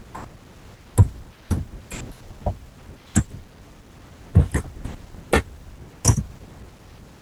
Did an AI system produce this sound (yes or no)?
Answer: no